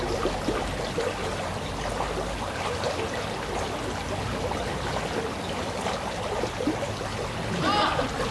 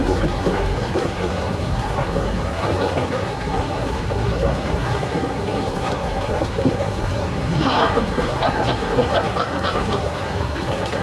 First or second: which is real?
first